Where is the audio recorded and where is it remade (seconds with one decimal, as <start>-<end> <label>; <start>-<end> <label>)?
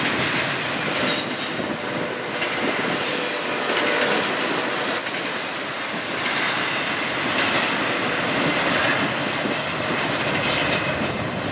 0.0-11.5 recorded